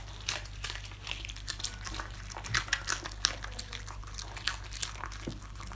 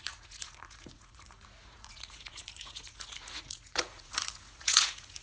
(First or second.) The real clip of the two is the first